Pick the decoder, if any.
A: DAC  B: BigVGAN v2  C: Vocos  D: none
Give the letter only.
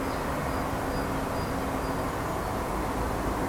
D